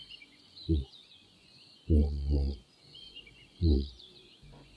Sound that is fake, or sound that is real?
fake